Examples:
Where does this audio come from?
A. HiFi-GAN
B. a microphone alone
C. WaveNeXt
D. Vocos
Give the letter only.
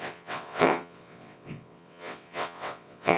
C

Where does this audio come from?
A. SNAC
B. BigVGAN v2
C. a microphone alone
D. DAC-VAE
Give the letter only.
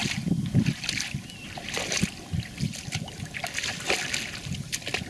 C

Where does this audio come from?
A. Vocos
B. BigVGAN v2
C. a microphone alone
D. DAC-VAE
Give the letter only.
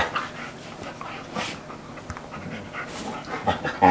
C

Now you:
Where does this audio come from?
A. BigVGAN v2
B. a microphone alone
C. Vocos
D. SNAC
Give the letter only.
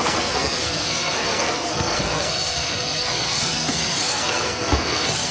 D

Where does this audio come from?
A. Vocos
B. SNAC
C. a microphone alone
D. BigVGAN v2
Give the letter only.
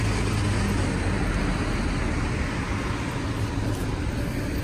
C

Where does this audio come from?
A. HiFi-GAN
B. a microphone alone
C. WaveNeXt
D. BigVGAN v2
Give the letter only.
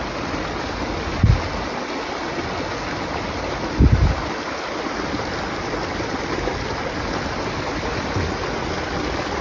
B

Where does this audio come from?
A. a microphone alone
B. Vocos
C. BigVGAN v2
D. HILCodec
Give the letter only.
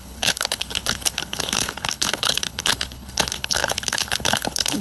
D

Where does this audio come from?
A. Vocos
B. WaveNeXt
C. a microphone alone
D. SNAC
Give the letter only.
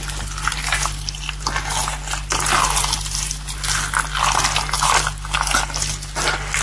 C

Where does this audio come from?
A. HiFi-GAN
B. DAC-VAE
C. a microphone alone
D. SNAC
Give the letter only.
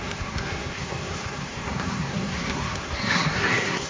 D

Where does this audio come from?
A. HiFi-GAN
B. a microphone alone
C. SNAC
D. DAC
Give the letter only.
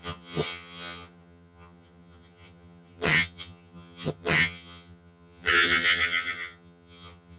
A